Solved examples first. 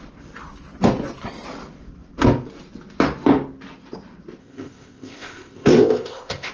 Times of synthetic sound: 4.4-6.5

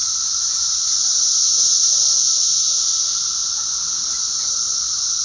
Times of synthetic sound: 0.0-0.6; 2.3-3.0

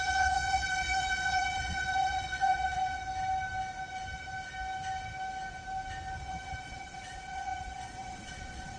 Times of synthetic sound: 0.0-3.0; 6.2-8.8

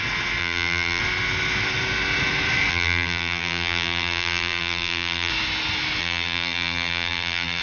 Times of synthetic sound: 0.4-1.0; 2.7-5.3; 6.0-7.6

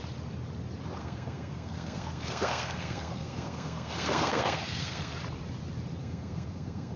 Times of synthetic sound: 1.0-5.2; 6.0-7.0

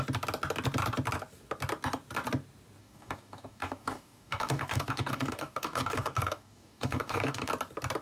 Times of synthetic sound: 2.8-7.5

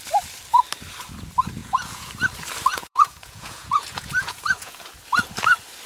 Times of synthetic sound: 1.6-2.1; 2.7-4.8